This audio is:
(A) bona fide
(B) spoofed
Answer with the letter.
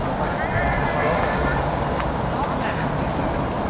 A